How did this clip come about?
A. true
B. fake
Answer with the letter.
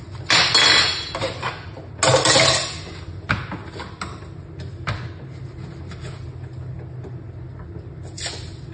A